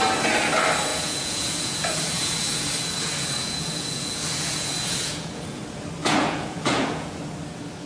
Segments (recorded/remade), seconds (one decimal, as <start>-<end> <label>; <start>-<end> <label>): 0.0-0.9 recorded; 0.9-5.6 remade; 5.6-6.0 recorded; 6.0-7.2 remade; 7.2-7.9 recorded